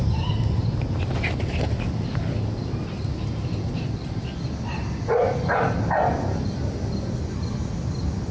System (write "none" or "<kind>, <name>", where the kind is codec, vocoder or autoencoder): none